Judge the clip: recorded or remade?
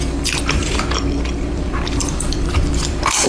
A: remade